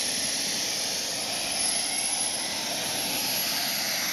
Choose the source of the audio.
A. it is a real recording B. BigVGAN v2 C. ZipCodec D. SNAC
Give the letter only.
B